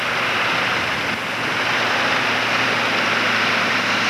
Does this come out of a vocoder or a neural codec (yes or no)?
no